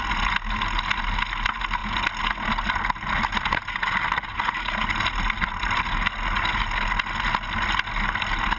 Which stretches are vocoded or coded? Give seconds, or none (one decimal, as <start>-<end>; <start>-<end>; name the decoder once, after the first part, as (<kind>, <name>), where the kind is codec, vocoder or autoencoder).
none